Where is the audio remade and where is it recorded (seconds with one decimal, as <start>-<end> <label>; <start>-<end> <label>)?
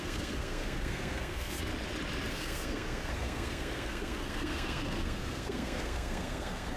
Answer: 0.0-1.7 remade; 1.7-2.3 recorded; 2.3-6.8 remade